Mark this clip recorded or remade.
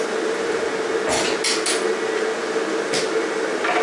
recorded